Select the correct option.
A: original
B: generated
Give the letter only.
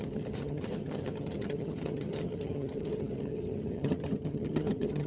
B